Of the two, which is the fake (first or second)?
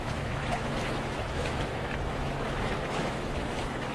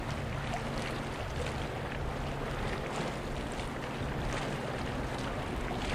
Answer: first